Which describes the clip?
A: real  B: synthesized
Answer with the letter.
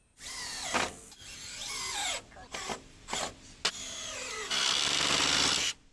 A